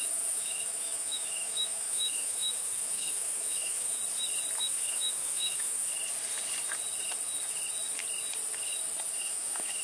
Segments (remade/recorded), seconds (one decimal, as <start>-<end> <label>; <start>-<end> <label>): 0.0-4.0 remade; 4.0-4.6 recorded; 4.6-5.9 remade; 5.9-9.2 recorded; 9.2-9.8 remade